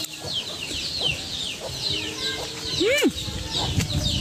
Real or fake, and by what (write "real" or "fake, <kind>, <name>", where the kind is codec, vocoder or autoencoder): real